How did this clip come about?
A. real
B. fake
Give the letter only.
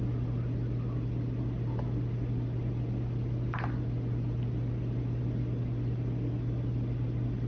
A